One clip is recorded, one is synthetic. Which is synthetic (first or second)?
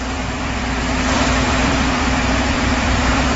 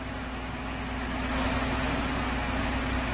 first